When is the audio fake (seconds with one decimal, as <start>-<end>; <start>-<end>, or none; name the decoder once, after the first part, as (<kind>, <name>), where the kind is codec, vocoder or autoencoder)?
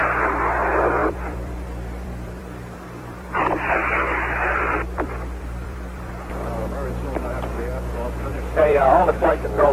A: 1.0-6.1 (vocoder, BigVGAN v2); 8.3-8.8